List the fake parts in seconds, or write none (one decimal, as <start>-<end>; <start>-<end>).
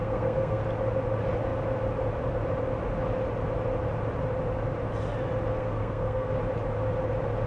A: 0.0-0.6; 5.6-6.3